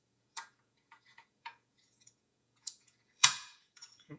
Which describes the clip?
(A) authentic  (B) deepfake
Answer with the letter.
B